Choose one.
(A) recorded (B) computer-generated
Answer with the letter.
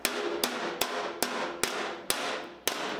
A